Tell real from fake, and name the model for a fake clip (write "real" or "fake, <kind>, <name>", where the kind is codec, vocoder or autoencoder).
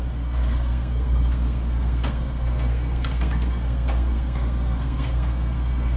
fake, codec, SNAC